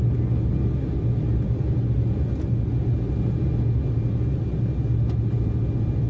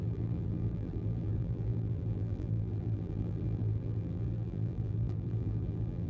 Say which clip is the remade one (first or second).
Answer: second